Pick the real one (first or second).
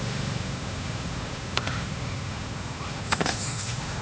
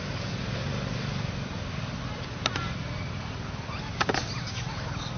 second